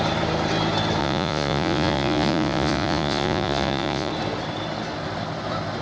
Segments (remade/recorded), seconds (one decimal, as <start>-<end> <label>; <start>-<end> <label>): 0.0-1.0 recorded; 1.0-4.1 remade; 4.1-5.8 recorded